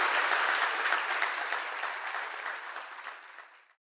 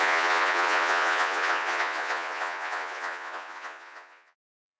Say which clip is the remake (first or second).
second